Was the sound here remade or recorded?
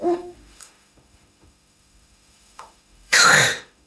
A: remade